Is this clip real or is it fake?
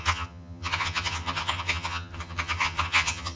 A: fake